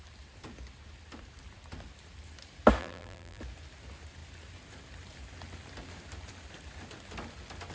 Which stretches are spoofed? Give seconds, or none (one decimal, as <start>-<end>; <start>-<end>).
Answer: 2.8-3.4